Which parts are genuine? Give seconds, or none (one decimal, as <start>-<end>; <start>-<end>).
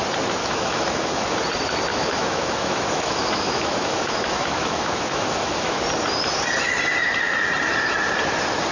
0.0-0.4; 1.4-1.9; 5.8-8.7